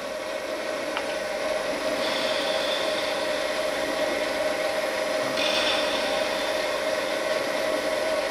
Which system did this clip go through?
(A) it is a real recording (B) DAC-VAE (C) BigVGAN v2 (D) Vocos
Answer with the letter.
C